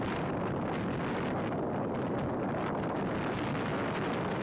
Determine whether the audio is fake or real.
real